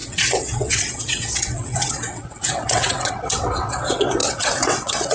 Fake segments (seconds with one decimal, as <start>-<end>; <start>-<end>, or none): 0.0-5.1